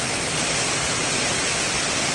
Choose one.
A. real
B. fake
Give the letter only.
A